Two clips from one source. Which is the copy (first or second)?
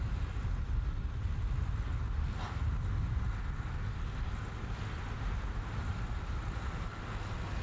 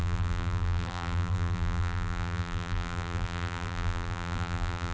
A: second